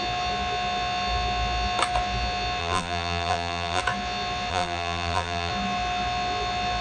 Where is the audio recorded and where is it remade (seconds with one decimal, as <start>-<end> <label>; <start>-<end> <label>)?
0.0-2.6 recorded; 2.6-3.8 remade; 3.8-4.5 recorded; 4.5-5.5 remade; 5.5-6.8 recorded